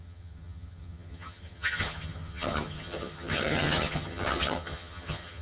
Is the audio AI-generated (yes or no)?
yes